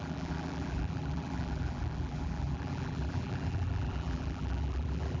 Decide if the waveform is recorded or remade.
remade